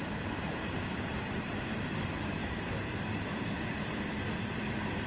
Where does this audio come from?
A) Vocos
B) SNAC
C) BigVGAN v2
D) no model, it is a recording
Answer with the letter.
C